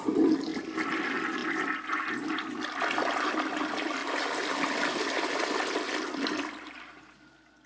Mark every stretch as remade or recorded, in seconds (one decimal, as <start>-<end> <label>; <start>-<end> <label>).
0.0-0.5 recorded; 0.5-1.0 remade; 1.0-1.4 recorded; 1.4-2.3 remade; 2.3-4.0 recorded; 4.0-7.3 remade; 7.3-7.7 recorded